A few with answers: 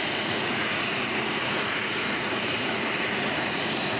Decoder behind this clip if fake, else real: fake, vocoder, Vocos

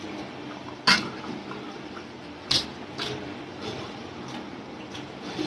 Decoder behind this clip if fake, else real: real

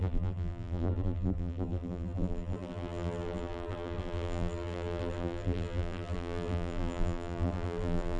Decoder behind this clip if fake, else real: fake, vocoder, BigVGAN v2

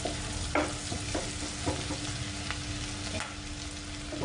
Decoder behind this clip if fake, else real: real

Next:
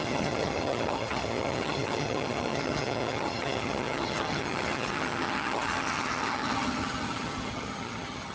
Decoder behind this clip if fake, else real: fake, vocoder, HiFi-GAN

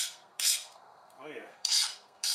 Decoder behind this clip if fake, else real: fake, codec, SNAC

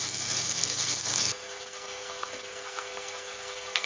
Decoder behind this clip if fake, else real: fake, codec, SNAC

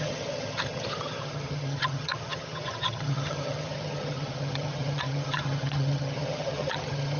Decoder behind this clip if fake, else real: fake, vocoder, HiFi-GAN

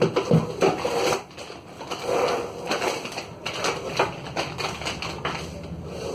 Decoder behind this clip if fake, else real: real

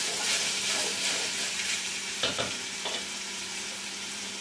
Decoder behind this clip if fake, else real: fake, vocoder, BigVGAN v2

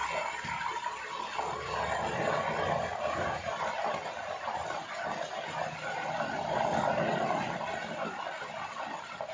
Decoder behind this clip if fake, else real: real